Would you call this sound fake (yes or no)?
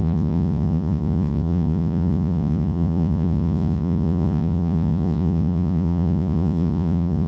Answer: yes